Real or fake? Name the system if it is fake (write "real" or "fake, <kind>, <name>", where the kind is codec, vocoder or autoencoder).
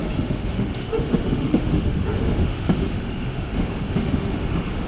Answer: fake, autoencoder, DAC-VAE